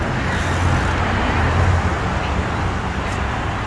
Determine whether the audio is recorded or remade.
recorded